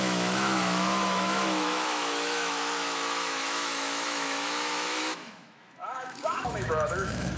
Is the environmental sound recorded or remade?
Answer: remade